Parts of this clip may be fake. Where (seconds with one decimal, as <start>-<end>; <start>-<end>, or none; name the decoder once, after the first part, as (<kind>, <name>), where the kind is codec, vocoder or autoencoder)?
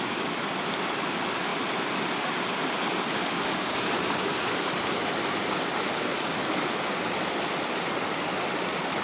none